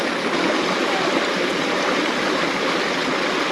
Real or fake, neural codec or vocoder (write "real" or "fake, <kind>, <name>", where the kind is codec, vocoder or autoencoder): real